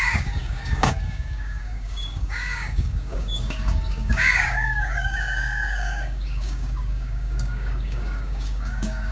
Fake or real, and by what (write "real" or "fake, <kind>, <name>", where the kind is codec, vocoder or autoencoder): fake, codec, DAC